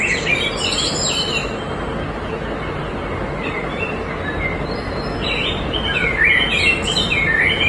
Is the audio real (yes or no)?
yes